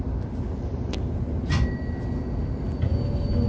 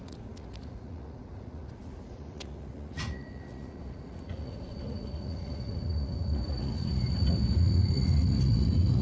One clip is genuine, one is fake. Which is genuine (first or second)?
first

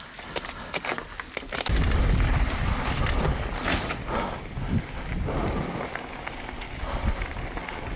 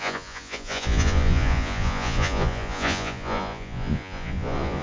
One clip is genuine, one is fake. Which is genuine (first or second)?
first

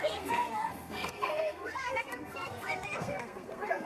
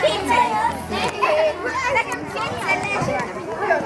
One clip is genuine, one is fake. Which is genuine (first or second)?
second